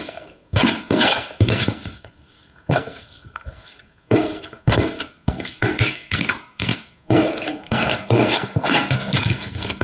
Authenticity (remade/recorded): remade